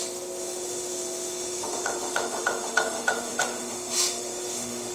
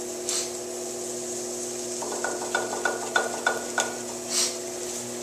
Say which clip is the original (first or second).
second